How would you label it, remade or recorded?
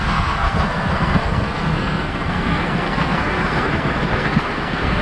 remade